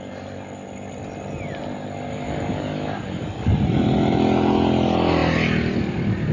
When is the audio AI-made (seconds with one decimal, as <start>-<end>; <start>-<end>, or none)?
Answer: 2.1-3.5